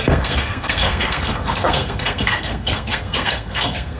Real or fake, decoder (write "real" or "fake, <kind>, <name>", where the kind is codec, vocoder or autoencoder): fake, codec, SNAC